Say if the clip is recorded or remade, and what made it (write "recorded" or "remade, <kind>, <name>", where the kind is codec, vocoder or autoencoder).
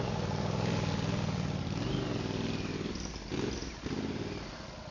recorded